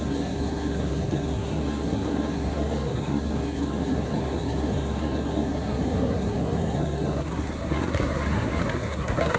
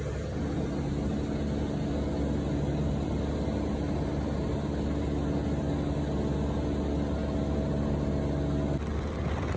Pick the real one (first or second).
second